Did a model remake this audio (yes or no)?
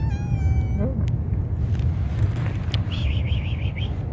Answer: no